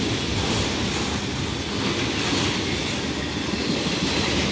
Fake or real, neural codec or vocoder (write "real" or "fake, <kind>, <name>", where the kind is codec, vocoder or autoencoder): real